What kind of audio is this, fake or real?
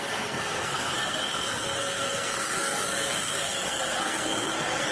fake